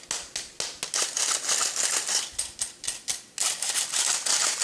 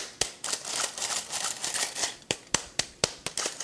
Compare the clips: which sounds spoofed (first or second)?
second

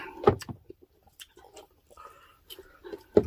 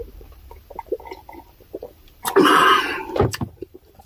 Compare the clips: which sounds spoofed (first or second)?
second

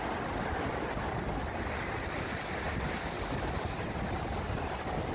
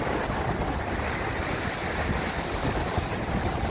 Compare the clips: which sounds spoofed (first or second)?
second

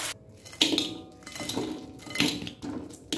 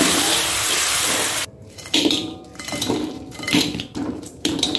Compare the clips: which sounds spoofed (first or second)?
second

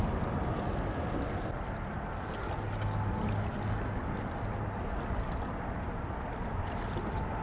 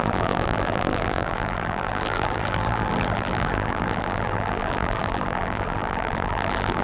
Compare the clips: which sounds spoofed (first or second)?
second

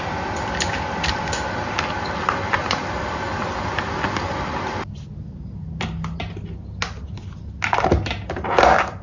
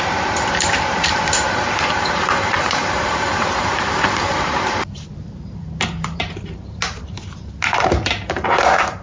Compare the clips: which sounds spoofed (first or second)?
second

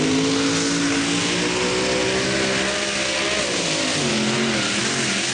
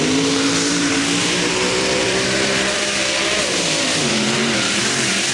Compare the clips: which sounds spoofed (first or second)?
second